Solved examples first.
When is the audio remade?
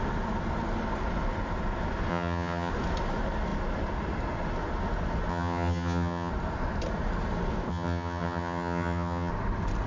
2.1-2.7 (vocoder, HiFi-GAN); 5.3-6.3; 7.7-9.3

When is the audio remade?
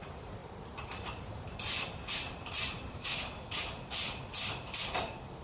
0.4-3.6 (vocoder, BigVGAN v2)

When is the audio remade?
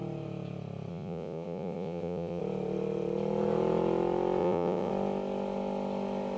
0.9-2.4 (vocoder, Vocos); 4.4-4.9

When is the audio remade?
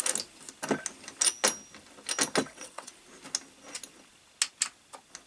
2.4-2.9 (vocoder, WaveNeXt)